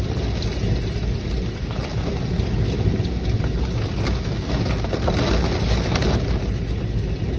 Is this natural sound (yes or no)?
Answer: yes